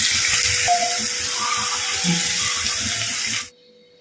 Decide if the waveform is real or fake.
real